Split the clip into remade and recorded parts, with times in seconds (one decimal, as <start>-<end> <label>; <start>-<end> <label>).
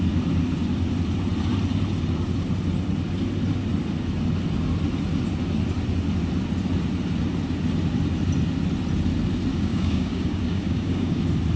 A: 0.0-9.5 recorded; 9.5-11.2 remade; 11.2-11.6 recorded